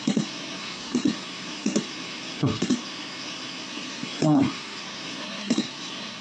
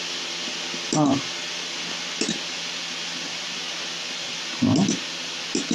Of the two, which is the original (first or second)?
second